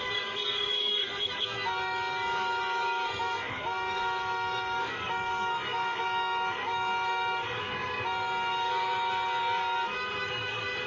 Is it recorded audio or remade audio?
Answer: remade